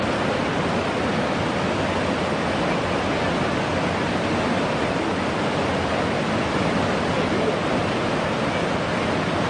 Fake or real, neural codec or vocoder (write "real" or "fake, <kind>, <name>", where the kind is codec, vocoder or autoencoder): real